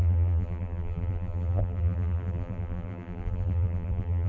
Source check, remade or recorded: remade